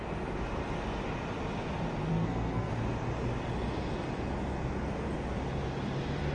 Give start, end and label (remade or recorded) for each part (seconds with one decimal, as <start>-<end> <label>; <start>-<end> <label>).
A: 0.0-2.1 recorded; 2.1-2.7 remade; 2.7-6.3 recorded

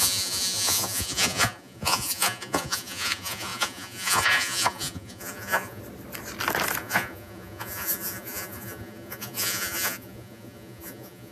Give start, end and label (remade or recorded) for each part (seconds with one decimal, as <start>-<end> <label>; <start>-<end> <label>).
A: 0.0-5.8 remade; 5.8-6.8 recorded; 6.8-11.3 remade